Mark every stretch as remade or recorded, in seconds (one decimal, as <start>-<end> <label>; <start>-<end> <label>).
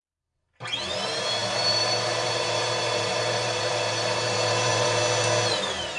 0.0-1.4 recorded; 1.4-5.0 remade; 5.0-6.0 recorded